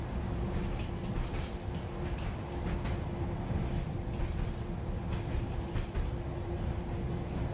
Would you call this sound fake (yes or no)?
no